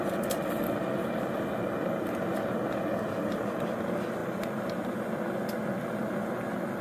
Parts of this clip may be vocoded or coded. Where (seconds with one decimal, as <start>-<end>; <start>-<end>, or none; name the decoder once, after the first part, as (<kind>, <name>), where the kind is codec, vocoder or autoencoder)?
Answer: none

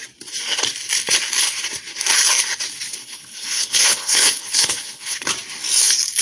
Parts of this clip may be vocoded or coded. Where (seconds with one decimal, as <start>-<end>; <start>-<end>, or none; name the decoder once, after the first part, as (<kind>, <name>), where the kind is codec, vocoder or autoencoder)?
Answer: 3.0-5.3 (codec, HILCodec)

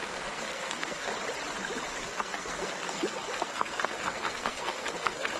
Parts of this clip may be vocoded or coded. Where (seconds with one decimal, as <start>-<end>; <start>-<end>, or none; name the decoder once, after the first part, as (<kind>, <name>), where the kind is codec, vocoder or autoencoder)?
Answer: 0.0-1.1 (codec, SNAC); 1.9-5.4

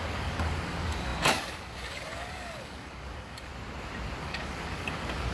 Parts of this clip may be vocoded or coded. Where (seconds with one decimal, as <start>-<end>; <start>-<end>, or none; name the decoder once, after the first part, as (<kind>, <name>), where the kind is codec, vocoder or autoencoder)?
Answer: 0.0-3.5 (codec, DAC); 4.2-5.3

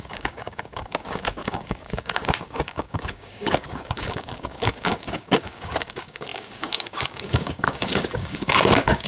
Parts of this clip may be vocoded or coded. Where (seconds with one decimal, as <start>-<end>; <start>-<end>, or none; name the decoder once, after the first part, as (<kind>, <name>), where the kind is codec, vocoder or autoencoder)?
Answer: 0.0-9.1 (codec, DAC)